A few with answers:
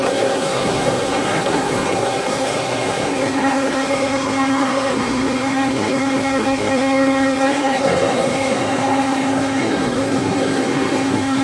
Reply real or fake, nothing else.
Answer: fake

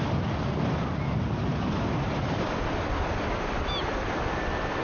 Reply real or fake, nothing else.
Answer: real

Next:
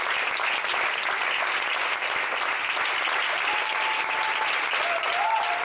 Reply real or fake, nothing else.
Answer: real